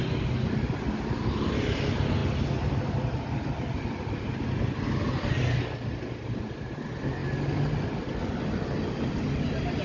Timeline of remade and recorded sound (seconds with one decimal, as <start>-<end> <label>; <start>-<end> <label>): 0.0-9.8 recorded